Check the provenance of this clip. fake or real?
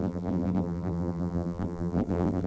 fake